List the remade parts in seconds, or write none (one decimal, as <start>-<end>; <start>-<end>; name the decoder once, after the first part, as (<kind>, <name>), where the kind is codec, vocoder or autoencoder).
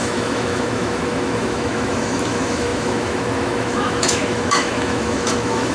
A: 0.0-5.7 (autoencoder, DAC-VAE)